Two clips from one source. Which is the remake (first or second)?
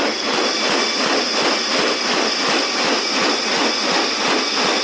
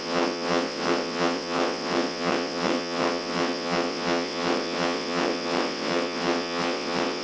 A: second